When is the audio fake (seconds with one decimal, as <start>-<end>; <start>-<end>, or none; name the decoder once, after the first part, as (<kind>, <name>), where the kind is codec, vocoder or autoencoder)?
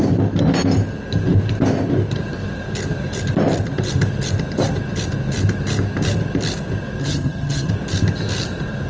7.0-7.7 (vocoder, HiFi-GAN)